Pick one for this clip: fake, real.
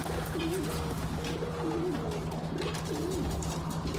real